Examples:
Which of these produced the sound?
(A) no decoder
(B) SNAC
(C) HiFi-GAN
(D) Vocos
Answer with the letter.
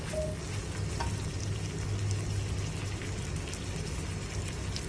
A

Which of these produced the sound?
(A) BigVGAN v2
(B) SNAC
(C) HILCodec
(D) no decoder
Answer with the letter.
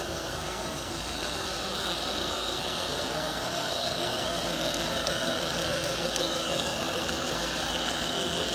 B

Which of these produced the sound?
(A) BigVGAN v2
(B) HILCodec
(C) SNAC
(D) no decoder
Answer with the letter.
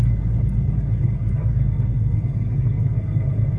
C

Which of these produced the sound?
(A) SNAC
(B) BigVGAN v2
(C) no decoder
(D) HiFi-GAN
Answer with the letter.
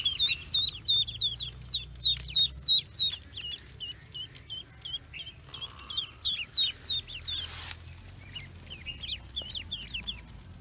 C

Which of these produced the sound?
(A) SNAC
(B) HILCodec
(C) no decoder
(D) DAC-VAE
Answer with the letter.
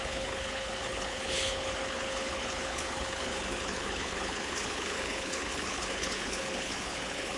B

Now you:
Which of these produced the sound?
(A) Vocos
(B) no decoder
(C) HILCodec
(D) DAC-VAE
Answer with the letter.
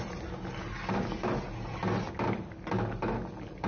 B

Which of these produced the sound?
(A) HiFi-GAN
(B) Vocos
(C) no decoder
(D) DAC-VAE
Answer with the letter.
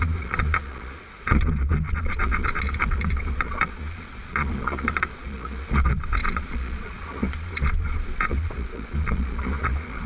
B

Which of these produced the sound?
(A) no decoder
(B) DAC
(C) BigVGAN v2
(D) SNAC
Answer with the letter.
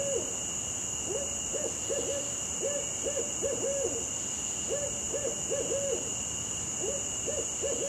A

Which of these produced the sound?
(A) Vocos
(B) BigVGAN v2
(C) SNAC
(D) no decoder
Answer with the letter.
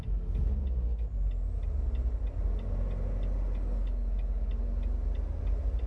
D